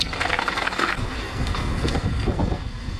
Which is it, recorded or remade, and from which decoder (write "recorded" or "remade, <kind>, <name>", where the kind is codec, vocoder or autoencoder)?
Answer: remade, codec, SNAC